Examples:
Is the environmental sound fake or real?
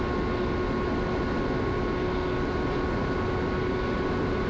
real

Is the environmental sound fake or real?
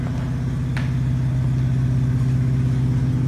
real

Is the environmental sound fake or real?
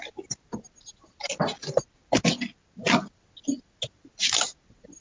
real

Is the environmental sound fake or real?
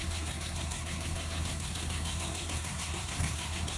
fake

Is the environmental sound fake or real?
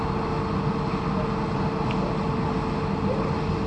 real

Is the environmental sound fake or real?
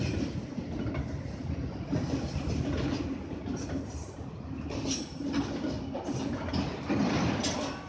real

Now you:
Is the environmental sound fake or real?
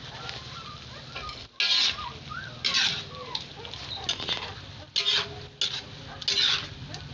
real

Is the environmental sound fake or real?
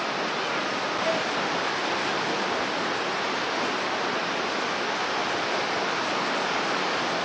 real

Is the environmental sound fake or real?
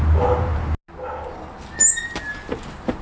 real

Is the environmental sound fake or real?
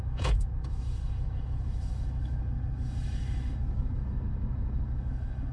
fake